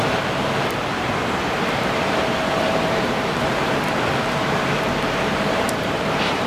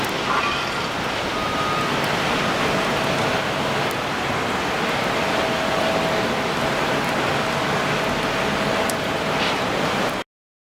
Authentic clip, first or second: second